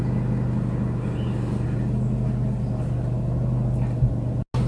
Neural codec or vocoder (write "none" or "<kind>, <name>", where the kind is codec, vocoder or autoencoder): none